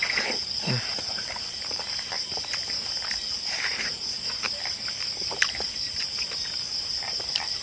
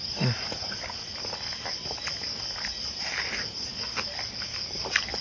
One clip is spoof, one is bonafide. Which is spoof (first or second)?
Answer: first